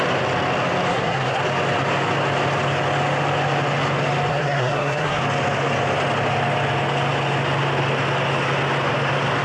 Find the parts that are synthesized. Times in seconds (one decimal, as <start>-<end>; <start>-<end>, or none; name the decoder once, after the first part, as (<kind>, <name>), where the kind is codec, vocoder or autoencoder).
0.9-1.4 (codec, SNAC); 4.3-5.2